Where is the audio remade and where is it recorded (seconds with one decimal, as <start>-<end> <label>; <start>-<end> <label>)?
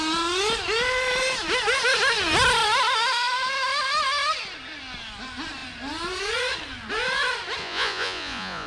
0.0-7.6 recorded; 7.6-8.7 remade